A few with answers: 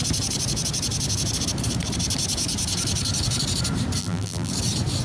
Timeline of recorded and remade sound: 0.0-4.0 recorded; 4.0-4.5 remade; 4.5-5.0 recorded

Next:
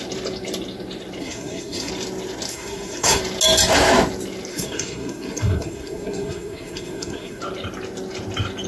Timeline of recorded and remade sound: 0.0-1.2 recorded; 1.2-1.9 remade; 1.9-2.5 recorded; 2.5-3.2 remade; 3.2-4.5 recorded; 4.5-7.4 remade; 7.4-8.7 recorded